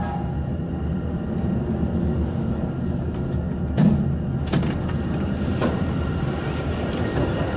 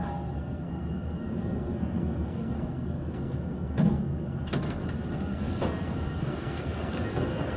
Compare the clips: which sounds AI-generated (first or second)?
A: second